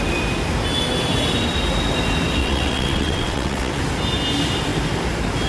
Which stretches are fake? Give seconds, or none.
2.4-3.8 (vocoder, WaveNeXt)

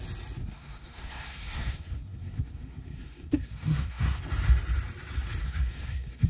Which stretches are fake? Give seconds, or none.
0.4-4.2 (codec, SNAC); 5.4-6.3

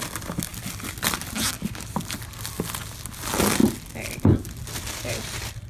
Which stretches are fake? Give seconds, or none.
none